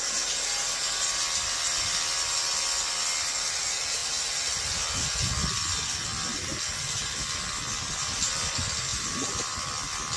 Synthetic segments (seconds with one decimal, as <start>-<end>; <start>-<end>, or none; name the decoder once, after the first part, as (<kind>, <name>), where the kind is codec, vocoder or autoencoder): none